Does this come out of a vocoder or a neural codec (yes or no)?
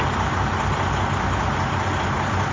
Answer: no